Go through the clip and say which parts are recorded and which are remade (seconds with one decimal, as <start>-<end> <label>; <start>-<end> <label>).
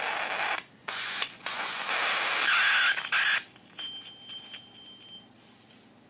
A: 0.0-0.8 recorded; 0.8-1.8 remade; 1.8-6.1 recorded